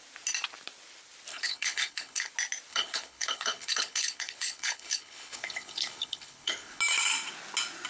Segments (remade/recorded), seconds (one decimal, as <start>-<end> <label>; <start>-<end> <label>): 0.0-1.3 recorded; 1.3-2.3 remade; 2.3-2.7 recorded; 2.7-6.8 remade; 6.8-7.9 recorded